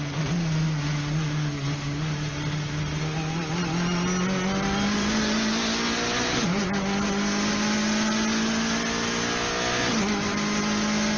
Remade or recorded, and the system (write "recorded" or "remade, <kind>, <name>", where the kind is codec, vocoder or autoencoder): recorded